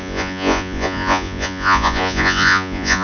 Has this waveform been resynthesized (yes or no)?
yes